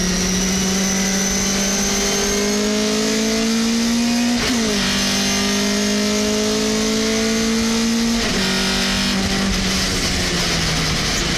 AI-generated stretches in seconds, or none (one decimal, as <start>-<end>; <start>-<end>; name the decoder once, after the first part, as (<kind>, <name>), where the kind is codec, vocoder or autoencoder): none